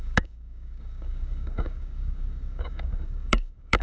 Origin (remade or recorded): remade